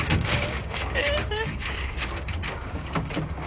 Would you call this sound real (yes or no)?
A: no